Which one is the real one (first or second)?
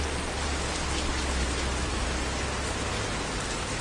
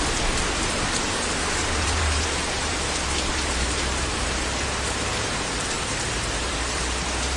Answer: first